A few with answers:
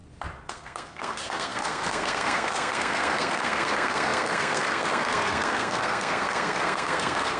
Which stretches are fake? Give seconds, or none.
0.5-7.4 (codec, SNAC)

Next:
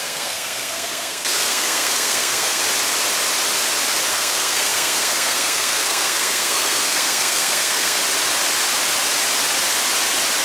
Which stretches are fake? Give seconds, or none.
0.0-2.6 (codec, SNAC); 4.1-8.0

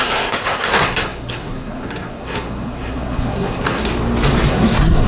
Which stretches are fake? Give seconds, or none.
0.0-3.9 (codec, SNAC); 4.5-5.1

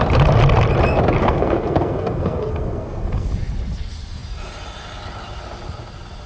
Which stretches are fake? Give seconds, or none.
1.2-3.3 (codec, SNAC)

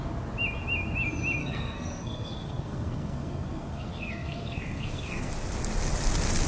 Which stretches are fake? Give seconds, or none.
1.4-5.3 (codec, SNAC)